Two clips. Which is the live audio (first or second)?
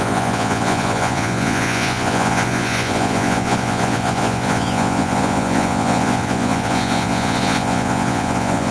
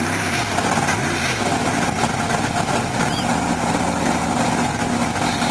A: second